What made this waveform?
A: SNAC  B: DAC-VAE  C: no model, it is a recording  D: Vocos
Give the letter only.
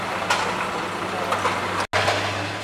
C